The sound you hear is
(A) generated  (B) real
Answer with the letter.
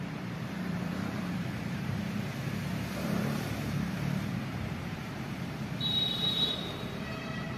A